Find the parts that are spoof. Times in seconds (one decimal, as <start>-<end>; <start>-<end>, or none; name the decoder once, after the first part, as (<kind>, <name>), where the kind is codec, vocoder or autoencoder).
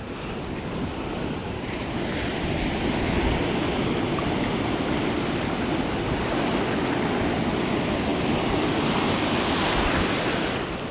1.4-1.9 (vocoder, BigVGAN v2)